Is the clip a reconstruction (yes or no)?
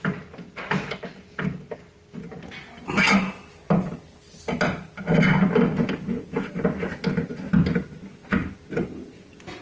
no